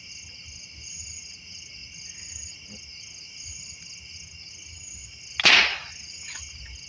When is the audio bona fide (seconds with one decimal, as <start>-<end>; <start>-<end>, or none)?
0.0-6.9